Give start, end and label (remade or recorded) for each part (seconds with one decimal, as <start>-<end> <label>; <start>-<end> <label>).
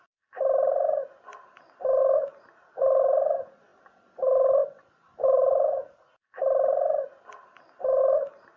0.0-8.6 recorded